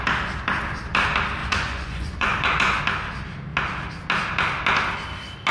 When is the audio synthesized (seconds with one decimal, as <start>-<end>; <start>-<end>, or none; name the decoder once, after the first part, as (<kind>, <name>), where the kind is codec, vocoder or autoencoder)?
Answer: 1.4-2.8 (vocoder, Vocos)